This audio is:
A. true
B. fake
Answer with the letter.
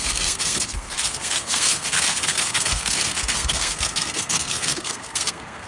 B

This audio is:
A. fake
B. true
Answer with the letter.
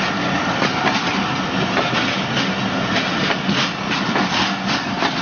B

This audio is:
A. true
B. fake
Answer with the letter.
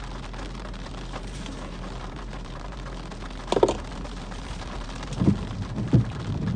B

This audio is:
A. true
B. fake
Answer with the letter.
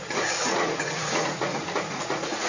B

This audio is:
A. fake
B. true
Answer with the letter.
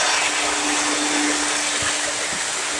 B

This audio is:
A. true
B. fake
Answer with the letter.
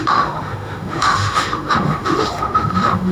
B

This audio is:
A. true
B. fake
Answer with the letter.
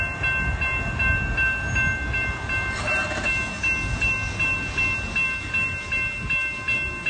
A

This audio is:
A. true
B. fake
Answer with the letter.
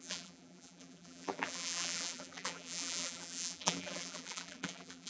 B